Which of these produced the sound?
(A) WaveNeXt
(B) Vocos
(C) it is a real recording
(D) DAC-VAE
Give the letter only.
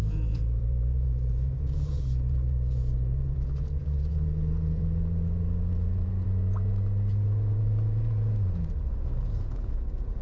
B